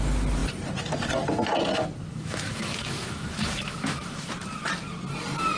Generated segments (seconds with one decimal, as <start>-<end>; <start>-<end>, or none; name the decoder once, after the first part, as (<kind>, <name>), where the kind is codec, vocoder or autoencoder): 2.1-4.3 (autoencoder, DAC-VAE)

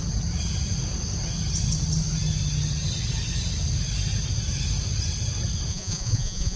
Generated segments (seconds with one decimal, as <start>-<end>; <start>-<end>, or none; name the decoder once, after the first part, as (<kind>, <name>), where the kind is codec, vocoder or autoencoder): 5.7-6.6 (vocoder, Vocos)

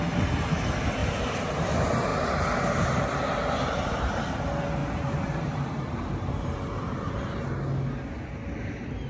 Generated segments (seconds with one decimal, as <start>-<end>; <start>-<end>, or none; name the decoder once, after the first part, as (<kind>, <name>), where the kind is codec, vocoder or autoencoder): 1.0-1.7 (vocoder, BigVGAN v2); 4.8-7.1

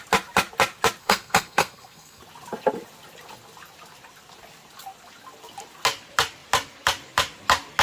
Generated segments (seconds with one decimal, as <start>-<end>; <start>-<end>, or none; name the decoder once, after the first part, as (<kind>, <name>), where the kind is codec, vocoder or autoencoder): 1.0-2.2 (codec, SNAC)

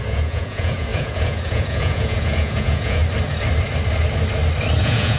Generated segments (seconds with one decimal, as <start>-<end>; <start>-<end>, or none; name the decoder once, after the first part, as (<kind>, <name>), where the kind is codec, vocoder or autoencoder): 0.0-3.0 (vocoder, Vocos); 4.8-5.2

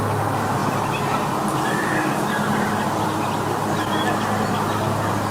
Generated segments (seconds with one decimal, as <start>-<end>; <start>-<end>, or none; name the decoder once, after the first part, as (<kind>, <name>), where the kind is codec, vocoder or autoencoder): none

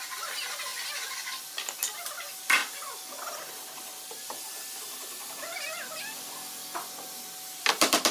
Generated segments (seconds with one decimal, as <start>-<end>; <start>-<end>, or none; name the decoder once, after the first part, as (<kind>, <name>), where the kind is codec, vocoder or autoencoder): none